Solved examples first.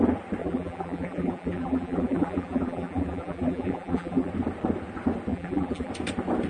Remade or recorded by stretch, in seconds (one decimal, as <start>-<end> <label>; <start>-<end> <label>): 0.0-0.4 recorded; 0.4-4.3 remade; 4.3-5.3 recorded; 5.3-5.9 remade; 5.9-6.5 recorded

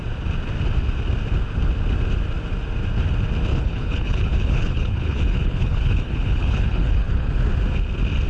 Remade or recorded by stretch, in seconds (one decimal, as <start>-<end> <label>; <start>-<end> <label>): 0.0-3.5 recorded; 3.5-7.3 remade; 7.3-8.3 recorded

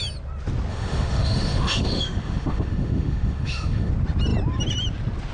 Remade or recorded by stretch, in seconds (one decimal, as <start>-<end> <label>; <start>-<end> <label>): 0.0-0.7 recorded; 0.7-3.9 remade; 3.9-5.3 recorded

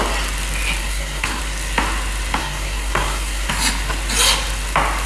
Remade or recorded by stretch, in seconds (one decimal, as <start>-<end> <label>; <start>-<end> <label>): 0.0-0.8 recorded; 0.8-1.4 remade; 1.4-2.4 recorded; 2.4-3.5 remade; 3.5-5.1 recorded

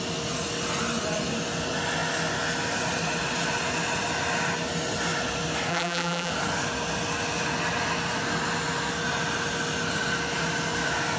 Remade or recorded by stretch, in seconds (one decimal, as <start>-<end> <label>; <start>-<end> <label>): 0.0-5.7 recorded; 5.7-6.3 remade; 6.3-11.2 recorded

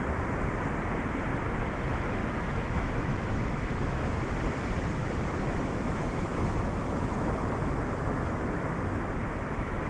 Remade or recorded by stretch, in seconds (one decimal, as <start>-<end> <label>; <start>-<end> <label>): 0.0-2.2 recorded; 2.2-4.1 remade; 4.1-5.0 recorded; 5.0-9.9 remade

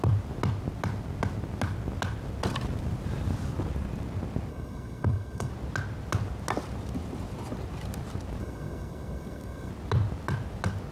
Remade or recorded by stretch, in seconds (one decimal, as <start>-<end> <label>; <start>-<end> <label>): 0.0-4.5 recorded; 4.5-5.5 remade; 5.5-8.4 recorded; 8.4-9.7 remade; 9.7-10.9 recorded

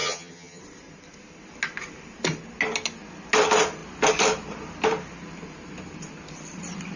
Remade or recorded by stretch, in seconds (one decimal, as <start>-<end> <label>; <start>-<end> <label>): 0.0-0.6 remade; 0.6-7.0 recorded